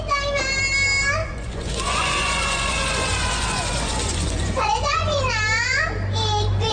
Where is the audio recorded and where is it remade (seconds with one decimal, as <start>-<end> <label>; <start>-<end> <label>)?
0.0-1.2 recorded; 1.2-5.2 remade; 5.2-6.7 recorded